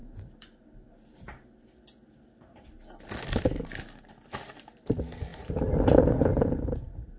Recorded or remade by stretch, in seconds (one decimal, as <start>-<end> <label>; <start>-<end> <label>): 0.0-7.2 recorded